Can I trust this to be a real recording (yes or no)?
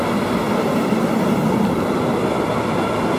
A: yes